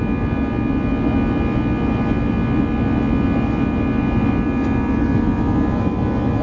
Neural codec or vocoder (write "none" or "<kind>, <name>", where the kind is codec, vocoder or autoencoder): none